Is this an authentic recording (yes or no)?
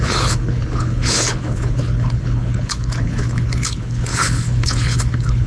no